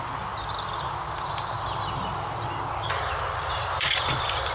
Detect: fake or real real